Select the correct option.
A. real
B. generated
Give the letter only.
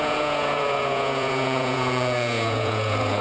B